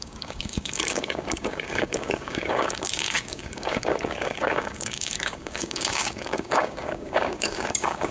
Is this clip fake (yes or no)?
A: yes